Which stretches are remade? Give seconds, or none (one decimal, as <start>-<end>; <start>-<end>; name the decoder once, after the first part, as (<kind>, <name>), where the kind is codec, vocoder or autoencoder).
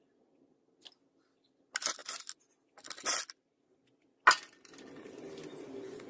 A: none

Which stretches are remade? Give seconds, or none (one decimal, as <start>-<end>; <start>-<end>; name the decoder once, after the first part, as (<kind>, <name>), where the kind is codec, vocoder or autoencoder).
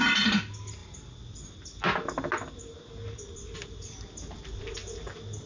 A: none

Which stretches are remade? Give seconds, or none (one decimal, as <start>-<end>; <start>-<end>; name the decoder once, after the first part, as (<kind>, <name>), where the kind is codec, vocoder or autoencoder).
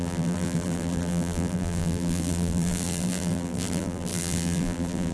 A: 0.0-5.1 (vocoder, BigVGAN v2)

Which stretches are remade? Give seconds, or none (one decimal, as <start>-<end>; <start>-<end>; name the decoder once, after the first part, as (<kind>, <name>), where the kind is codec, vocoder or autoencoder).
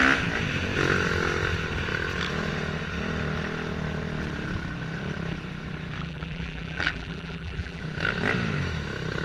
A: 6.0-7.8 (vocoder, BigVGAN v2)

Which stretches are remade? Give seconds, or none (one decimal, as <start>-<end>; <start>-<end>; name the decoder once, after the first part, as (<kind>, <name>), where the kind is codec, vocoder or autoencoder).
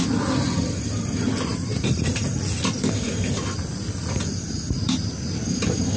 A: 1.5-5.1 (vocoder, BigVGAN v2)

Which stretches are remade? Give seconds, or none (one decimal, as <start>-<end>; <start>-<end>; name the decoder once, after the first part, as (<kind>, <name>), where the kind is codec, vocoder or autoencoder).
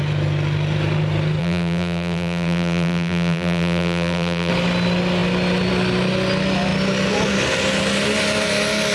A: 1.4-4.5 (vocoder, BigVGAN v2)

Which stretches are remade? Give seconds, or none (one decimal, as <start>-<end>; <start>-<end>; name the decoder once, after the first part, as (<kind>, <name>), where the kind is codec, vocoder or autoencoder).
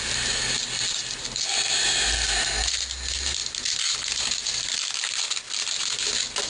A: none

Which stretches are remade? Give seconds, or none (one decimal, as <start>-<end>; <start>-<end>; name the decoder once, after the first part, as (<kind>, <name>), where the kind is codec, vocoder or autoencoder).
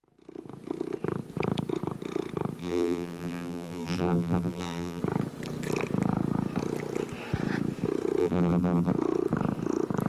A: 2.6-5.0 (vocoder, BigVGAN v2); 8.2-8.9